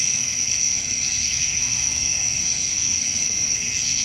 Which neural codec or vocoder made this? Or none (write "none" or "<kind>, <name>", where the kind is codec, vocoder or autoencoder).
codec, SNAC